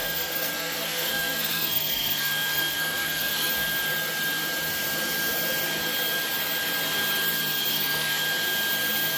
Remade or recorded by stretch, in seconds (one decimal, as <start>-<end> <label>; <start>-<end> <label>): 0.0-3.5 remade; 3.5-7.7 recorded; 7.7-8.2 remade; 8.2-9.2 recorded